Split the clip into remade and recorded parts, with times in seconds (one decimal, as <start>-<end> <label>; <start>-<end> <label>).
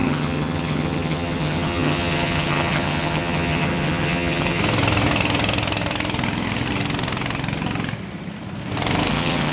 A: 0.0-4.6 remade; 4.6-9.1 recorded; 9.1-9.5 remade